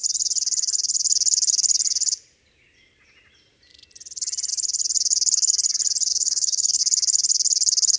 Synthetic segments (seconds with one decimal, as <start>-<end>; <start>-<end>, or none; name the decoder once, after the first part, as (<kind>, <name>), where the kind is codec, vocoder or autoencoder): 6.1-6.8 (autoencoder, DAC-VAE)